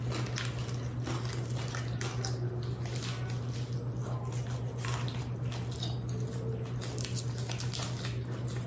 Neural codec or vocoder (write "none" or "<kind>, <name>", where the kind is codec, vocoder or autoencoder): none